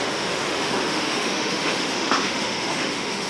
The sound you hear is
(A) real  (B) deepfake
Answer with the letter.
B